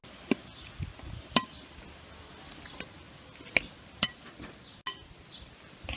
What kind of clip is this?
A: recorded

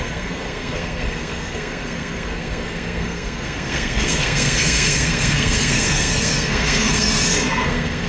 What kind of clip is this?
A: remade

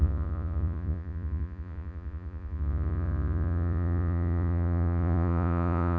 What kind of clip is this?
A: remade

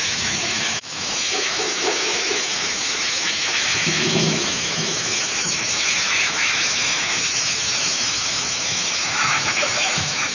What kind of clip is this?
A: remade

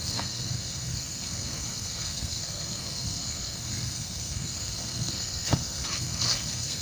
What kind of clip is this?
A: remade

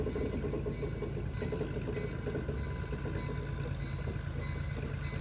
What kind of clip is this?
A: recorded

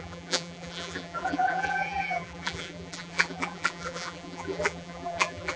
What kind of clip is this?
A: remade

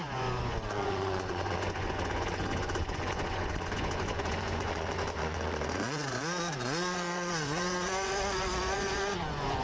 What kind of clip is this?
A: remade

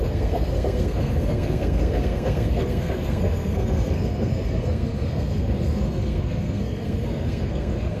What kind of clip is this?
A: remade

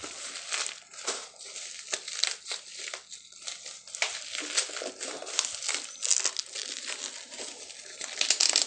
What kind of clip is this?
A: recorded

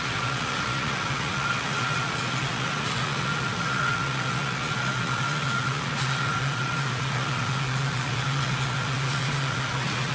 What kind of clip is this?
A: remade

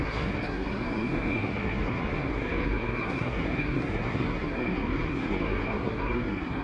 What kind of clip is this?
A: remade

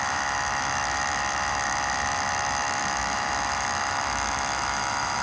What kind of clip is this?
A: remade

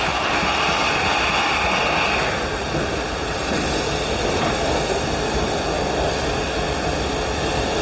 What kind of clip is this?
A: recorded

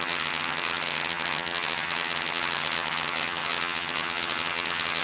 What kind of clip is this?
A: remade